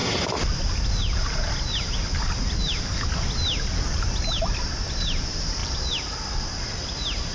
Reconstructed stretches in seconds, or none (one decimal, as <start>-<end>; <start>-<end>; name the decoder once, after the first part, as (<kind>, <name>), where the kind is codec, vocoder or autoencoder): 4.4-7.3 (vocoder, BigVGAN v2)